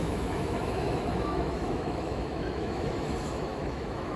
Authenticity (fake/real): fake